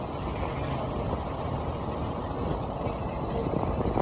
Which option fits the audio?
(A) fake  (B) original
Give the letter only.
B